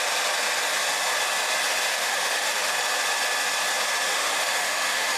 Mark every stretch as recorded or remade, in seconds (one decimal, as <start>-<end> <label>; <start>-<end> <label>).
0.0-1.9 recorded; 1.9-2.7 remade; 2.7-4.1 recorded; 4.1-5.2 remade